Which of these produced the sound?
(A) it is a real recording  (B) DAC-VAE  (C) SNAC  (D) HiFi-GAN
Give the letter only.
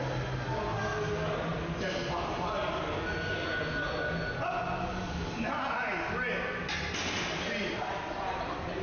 A